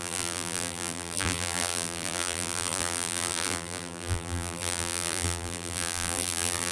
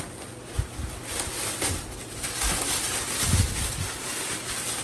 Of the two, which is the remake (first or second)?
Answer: first